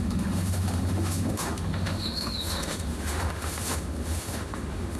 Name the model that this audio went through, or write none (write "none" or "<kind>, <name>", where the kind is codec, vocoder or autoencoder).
autoencoder, DAC-VAE